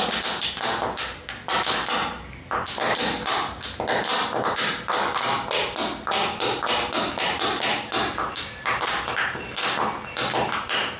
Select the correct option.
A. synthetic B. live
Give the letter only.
B